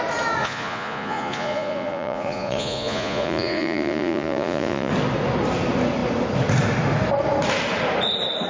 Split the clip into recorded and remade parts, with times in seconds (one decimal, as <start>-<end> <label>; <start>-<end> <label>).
0.0-0.4 recorded; 0.4-4.9 remade; 4.9-8.5 recorded